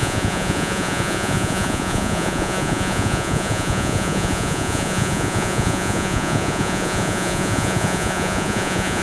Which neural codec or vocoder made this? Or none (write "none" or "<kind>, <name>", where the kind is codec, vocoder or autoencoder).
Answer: vocoder, Vocos